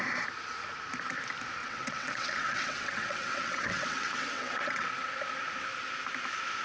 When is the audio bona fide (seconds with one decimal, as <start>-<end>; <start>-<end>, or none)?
0.0-1.6; 4.9-6.6